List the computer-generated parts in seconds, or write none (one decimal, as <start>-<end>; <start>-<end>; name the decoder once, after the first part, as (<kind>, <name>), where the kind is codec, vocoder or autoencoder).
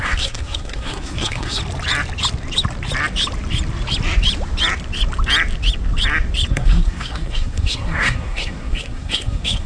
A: 0.0-1.6 (codec, SNAC); 6.5-9.7